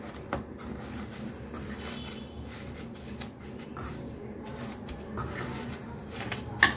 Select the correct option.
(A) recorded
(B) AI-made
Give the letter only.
A